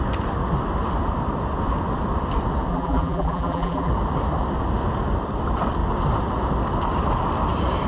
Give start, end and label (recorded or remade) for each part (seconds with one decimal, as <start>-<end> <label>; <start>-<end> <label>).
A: 0.0-2.7 recorded; 2.7-3.9 remade; 3.9-7.9 recorded